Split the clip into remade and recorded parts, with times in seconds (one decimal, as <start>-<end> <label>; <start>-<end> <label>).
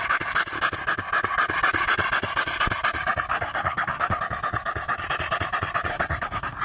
0.0-3.3 recorded; 3.3-4.2 remade; 4.2-5.9 recorded; 5.9-6.6 remade